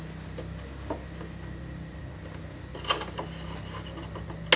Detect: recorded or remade recorded